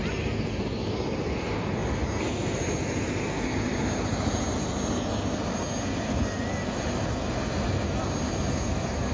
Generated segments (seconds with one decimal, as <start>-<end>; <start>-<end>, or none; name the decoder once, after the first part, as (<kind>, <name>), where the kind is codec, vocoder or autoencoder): none